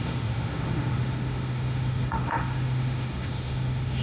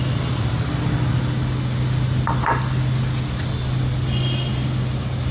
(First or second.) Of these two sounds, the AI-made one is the first